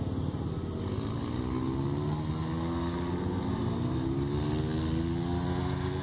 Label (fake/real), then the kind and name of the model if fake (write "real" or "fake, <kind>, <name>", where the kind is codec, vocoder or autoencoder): real